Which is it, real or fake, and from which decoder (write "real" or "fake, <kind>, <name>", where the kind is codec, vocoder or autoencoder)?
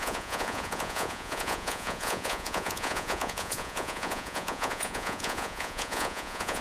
fake, vocoder, Vocos